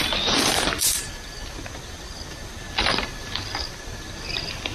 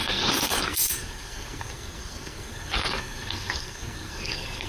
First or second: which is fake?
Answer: second